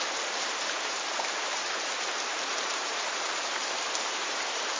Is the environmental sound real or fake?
fake